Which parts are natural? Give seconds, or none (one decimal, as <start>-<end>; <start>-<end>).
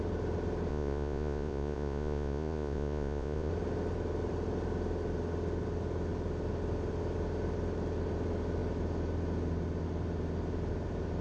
0.0-0.7; 3.5-11.2